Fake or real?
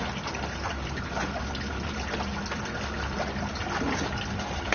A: real